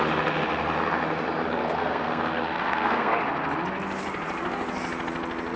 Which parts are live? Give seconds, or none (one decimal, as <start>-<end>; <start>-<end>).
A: 0.0-1.6; 3.1-5.6